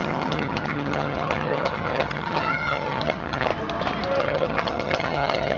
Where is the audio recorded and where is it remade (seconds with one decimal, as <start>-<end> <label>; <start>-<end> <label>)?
0.0-3.5 remade; 3.5-4.2 recorded; 4.2-5.6 remade